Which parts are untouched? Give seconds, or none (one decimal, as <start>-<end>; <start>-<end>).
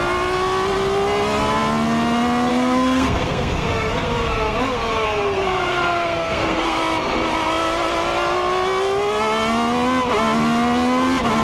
0.0-2.5; 6.8-11.4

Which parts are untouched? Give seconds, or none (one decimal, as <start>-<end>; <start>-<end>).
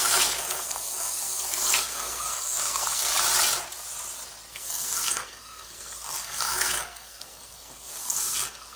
3.1-4.5